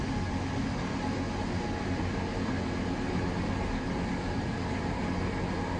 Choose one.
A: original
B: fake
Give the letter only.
A